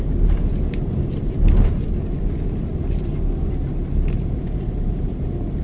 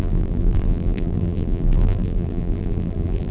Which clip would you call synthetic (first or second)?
second